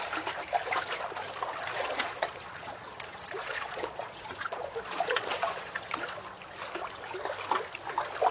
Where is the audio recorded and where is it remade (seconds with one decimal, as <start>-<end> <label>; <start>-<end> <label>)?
0.0-1.7 recorded; 1.7-6.2 remade; 6.2-8.3 recorded